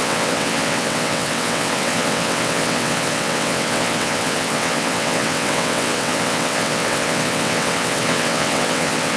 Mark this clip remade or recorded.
remade